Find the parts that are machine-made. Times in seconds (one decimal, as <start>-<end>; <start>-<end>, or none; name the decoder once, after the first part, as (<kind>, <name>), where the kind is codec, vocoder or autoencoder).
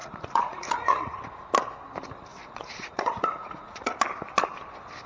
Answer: 0.0-1.2 (vocoder, Vocos); 2.3-4.0